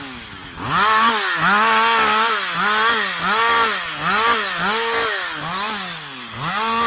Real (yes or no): yes